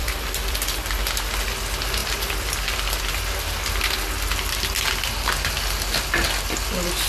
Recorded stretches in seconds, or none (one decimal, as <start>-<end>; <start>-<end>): 0.5-2.0; 3.0-7.1